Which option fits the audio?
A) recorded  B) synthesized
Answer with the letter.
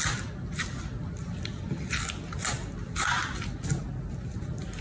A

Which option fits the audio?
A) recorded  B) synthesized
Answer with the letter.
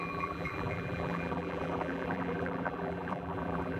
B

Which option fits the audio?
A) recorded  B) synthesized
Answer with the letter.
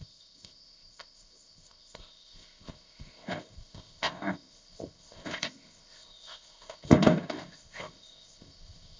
B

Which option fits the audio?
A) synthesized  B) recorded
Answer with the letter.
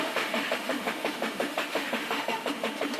A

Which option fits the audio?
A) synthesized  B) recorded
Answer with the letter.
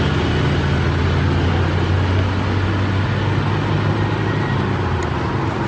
B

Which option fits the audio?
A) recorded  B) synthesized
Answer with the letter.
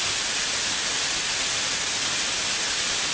A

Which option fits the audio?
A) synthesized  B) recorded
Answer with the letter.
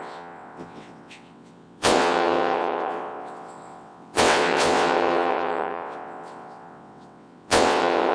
A